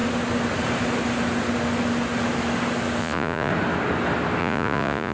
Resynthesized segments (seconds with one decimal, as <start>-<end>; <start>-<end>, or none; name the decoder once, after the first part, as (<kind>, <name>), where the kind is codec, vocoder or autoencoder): 3.0-3.5 (vocoder, Vocos); 4.4-5.1